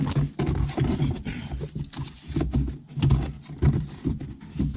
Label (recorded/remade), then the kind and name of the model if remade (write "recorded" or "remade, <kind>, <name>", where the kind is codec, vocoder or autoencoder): recorded